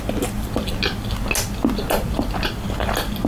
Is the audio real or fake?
real